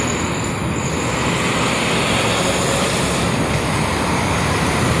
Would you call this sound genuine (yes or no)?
yes